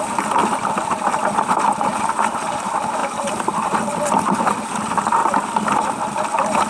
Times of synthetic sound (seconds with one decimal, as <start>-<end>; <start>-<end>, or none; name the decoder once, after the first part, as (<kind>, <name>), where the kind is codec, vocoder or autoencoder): none